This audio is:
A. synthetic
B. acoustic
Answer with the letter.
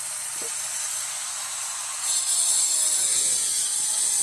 B